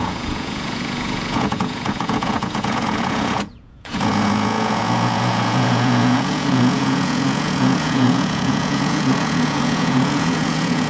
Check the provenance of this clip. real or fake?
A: fake